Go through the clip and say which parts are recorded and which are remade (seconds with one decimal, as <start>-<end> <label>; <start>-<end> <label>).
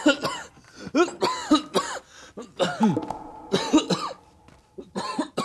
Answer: 0.0-5.4 recorded